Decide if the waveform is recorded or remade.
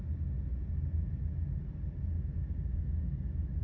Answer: recorded